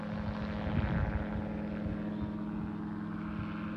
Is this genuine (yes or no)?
yes